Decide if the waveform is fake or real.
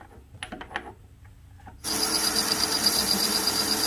real